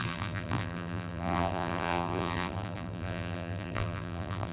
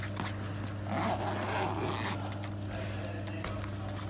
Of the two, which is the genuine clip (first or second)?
second